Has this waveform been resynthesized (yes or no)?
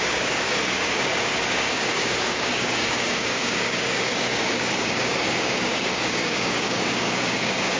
yes